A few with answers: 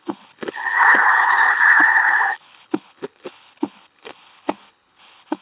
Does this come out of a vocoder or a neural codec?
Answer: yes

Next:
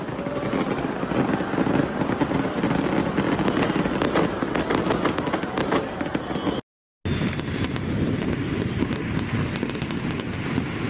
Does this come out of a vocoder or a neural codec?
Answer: no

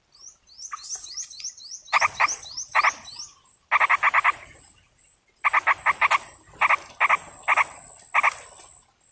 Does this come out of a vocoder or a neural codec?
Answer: no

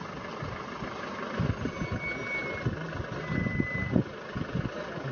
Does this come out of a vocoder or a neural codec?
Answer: no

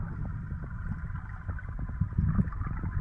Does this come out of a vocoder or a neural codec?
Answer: no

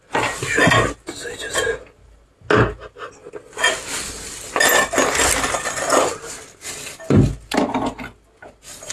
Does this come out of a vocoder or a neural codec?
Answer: no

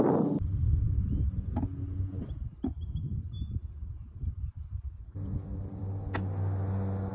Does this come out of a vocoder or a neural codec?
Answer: no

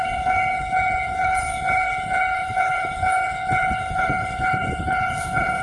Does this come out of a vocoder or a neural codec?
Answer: yes